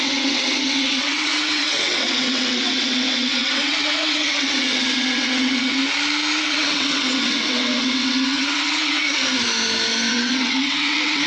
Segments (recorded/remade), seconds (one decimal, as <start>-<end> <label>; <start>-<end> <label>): 0.0-5.8 remade; 5.8-6.4 recorded; 6.4-9.0 remade; 9.0-10.1 recorded; 10.1-11.3 remade